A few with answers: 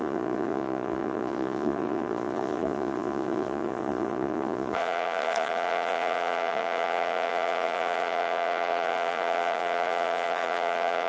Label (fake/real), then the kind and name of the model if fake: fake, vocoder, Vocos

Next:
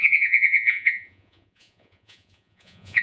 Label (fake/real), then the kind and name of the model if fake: fake, vocoder, Vocos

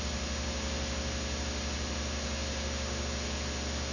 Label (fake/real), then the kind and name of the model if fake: real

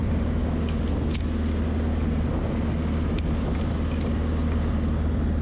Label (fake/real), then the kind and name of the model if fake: real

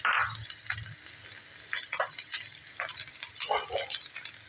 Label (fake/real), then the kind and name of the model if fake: real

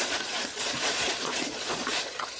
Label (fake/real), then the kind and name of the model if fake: fake, vocoder, Vocos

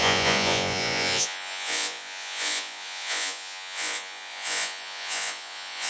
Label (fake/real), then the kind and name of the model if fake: fake, vocoder, Vocos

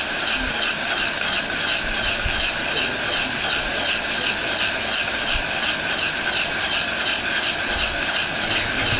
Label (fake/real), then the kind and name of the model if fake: real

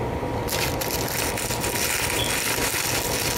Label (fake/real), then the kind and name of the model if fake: real